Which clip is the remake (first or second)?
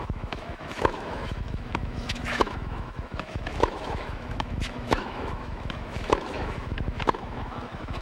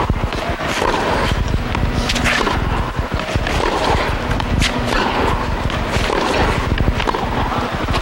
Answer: first